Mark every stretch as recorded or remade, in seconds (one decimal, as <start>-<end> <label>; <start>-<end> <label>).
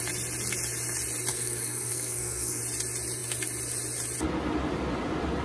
0.0-1.3 recorded; 1.3-2.6 remade; 2.6-5.4 recorded